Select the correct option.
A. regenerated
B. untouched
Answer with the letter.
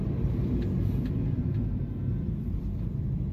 B